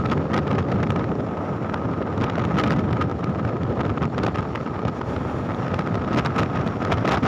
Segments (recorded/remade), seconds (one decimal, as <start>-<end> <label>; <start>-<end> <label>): 0.0-7.3 recorded